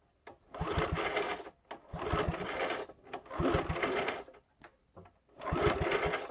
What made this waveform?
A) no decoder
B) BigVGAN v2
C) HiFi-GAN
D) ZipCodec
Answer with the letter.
A